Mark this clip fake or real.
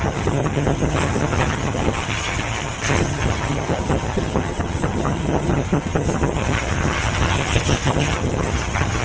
fake